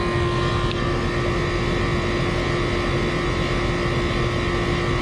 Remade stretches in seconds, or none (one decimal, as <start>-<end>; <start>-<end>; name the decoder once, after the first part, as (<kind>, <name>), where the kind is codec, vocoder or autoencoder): none